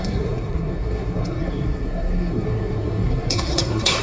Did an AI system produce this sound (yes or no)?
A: yes